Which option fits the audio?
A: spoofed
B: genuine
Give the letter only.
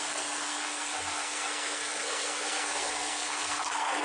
A